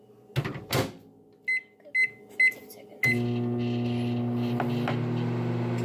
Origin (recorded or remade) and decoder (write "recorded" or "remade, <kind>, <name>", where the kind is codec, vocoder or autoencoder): recorded